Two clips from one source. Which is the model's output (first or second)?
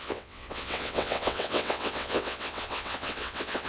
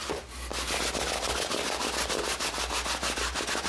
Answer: first